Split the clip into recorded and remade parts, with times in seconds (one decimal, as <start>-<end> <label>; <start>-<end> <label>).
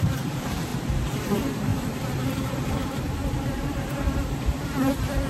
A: 0.0-0.7 remade; 0.7-1.2 recorded; 1.2-5.3 remade